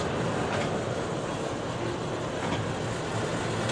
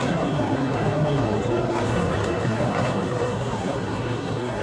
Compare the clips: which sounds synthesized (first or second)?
second